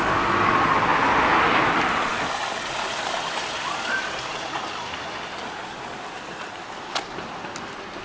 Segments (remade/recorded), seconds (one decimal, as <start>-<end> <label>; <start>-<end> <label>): 0.0-8.0 recorded